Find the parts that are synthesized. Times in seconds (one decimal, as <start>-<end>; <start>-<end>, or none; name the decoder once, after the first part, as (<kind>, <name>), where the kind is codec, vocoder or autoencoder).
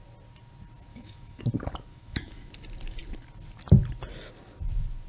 0.9-1.4 (autoencoder, DAC-VAE); 1.9-2.5